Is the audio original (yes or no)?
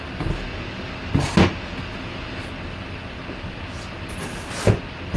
yes